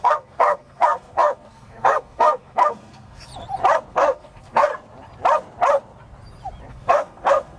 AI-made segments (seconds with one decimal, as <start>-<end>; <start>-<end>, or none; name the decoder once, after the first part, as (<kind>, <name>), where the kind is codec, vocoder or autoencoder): 0.0-3.3 (codec, SNAC); 3.9-4.7; 6.7-7.6